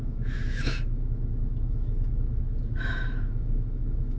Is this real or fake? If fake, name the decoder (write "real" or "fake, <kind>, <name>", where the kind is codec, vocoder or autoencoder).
fake, autoencoder, DAC-VAE